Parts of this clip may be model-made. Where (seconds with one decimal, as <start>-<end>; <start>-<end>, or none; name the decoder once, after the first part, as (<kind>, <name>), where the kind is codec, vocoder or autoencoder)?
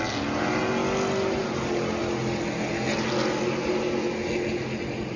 none